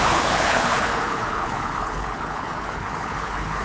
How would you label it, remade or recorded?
remade